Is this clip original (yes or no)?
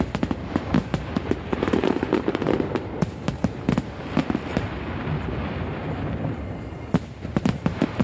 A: no